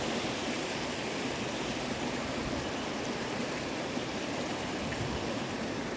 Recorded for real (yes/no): yes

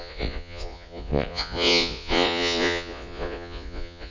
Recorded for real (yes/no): no